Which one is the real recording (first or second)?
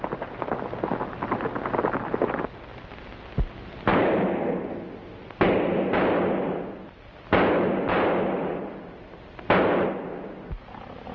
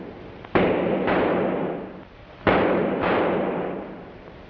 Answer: first